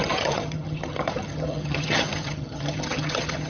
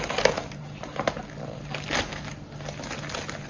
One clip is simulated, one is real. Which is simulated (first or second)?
first